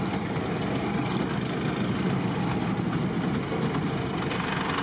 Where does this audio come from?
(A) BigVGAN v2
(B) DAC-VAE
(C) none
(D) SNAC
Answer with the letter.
C